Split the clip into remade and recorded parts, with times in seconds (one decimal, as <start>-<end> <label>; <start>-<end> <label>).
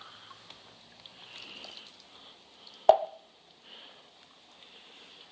0.0-5.3 recorded